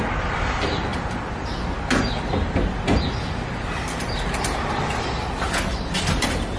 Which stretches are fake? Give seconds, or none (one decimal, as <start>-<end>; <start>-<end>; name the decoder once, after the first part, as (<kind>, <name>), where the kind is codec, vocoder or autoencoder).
none